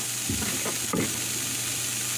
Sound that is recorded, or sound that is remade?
recorded